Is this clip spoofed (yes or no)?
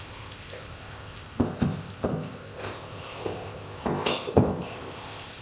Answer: yes